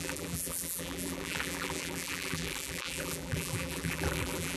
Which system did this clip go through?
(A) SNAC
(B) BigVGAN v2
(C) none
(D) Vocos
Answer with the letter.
B